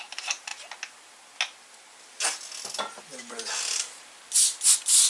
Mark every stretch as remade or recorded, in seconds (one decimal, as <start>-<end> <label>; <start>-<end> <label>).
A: 0.0-5.1 recorded